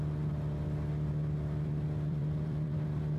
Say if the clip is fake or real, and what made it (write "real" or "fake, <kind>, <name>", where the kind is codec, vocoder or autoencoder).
fake, vocoder, BigVGAN v2